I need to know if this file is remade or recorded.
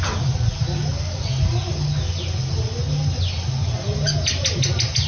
recorded